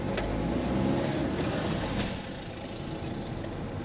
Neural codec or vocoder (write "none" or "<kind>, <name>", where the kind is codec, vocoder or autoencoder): none